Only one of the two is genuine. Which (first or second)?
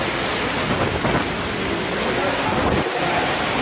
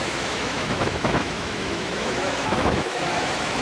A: first